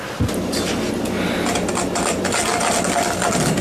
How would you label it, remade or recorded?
recorded